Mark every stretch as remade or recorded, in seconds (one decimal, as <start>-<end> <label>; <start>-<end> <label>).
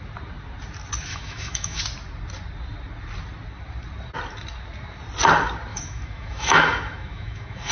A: 0.0-1.1 recorded; 1.1-1.8 remade; 1.8-5.7 recorded; 5.7-7.7 remade